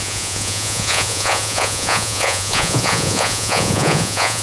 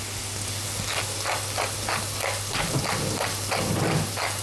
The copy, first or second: first